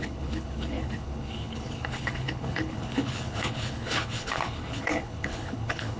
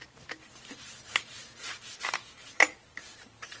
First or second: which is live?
second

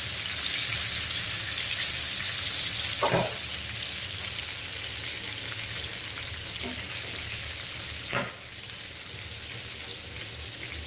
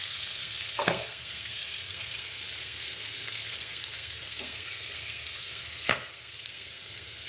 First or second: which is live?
first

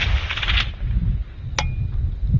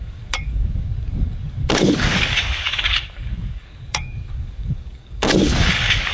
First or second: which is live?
first